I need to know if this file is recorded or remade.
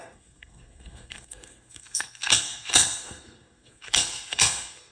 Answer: remade